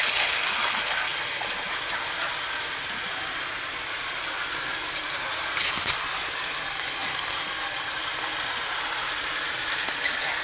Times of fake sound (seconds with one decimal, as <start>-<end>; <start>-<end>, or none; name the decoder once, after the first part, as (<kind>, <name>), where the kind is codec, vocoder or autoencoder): none

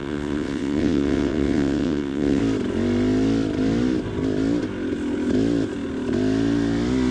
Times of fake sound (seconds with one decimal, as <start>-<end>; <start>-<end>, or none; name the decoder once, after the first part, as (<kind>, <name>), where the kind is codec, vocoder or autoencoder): 0.0-2.4 (vocoder, WaveNeXt)

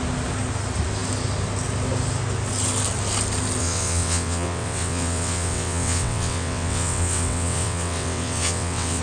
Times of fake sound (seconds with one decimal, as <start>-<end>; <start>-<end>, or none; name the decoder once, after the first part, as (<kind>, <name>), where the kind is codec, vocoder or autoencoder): 3.6-9.0 (vocoder, WaveNeXt)

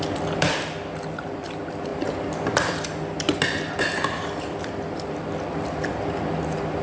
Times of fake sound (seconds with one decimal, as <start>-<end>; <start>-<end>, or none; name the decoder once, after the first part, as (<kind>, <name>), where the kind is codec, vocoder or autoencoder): none

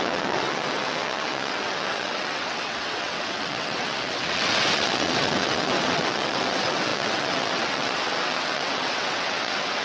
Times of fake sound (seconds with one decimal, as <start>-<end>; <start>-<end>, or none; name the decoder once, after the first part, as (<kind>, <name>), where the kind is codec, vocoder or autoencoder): 0.0-9.8 (vocoder, WaveNeXt)

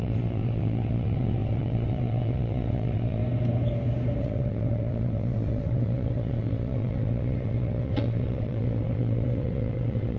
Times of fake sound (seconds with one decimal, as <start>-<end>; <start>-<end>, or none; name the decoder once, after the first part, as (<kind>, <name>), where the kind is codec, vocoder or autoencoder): 0.0-3.2 (vocoder, WaveNeXt); 4.2-10.2